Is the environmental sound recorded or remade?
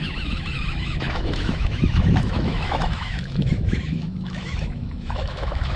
remade